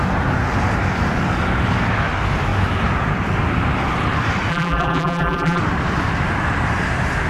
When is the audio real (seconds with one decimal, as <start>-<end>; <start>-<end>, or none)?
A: 0.0-4.5; 5.6-7.3